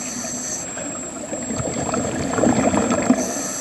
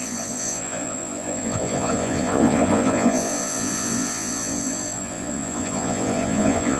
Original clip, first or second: first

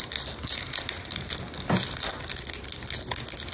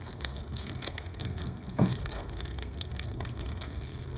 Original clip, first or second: first